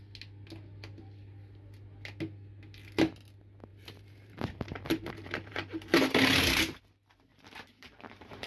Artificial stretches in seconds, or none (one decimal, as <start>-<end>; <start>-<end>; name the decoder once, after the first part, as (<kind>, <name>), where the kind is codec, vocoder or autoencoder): 3.7-6.8 (vocoder, BigVGAN v2); 7.3-8.5